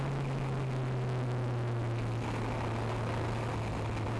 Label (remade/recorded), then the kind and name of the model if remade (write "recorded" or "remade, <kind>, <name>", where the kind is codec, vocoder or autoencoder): recorded